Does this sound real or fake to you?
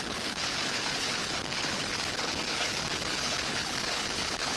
fake